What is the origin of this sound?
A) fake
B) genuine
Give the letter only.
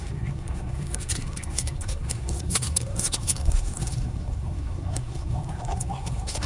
A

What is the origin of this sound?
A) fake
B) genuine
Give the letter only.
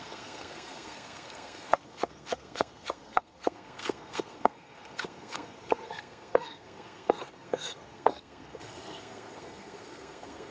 A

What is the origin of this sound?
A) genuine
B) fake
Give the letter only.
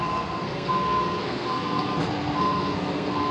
B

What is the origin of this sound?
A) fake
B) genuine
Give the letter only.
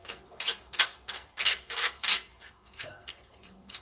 A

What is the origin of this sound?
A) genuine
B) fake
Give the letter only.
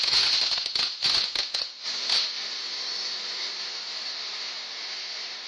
A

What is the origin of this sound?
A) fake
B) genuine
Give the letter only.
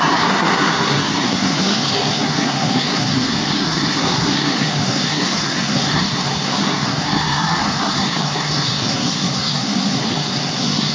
A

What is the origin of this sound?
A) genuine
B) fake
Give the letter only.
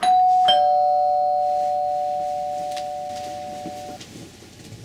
A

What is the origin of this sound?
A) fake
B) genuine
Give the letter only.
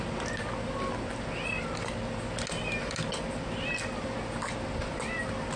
B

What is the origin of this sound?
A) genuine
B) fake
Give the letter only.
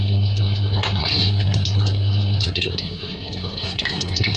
B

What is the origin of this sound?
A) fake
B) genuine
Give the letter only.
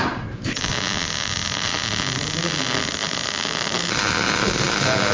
B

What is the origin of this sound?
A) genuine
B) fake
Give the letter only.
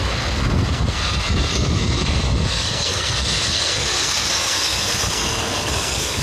B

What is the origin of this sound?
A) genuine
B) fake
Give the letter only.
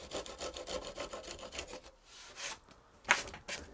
A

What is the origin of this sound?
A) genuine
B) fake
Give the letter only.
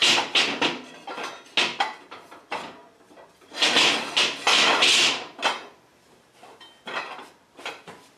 A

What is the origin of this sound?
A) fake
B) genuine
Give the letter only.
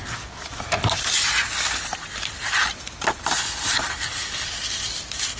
B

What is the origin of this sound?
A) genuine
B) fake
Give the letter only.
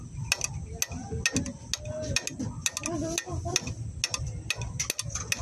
A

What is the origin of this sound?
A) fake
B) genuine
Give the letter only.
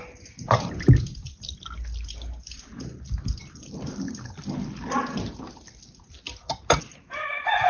B